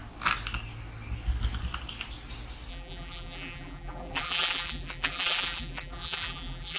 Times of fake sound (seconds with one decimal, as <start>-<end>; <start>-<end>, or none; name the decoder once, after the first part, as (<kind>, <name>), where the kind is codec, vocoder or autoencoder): 2.7-6.8 (vocoder, BigVGAN v2)